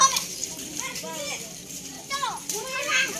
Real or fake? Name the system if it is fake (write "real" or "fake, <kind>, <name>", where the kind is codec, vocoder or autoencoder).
real